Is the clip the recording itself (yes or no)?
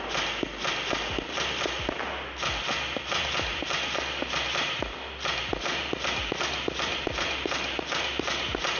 yes